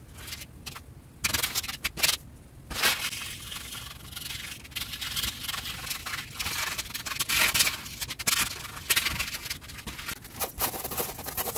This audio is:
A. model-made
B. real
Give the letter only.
B